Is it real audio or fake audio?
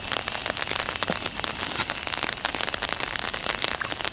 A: real